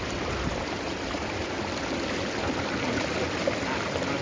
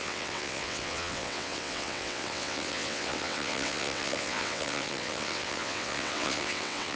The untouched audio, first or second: first